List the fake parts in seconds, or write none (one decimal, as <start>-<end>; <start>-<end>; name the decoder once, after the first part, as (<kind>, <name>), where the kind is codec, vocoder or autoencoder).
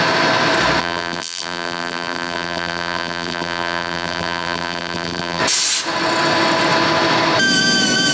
0.8-5.4 (vocoder, BigVGAN v2)